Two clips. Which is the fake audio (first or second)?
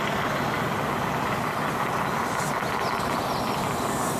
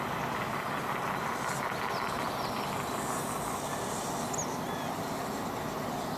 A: first